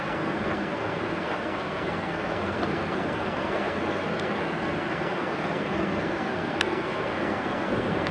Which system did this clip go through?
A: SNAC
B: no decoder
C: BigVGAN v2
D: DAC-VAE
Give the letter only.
A